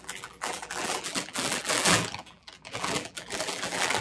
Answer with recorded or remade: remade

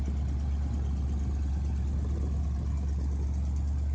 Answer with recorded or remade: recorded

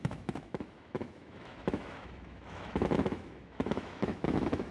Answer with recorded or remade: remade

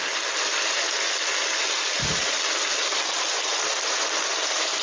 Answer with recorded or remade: recorded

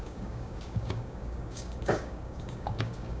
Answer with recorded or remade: remade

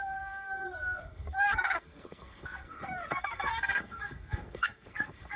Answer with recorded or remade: remade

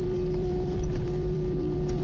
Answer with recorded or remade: remade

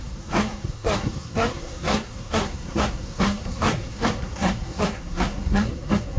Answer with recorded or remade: remade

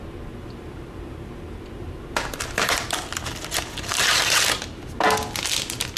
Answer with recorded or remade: recorded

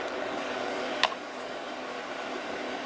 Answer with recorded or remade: remade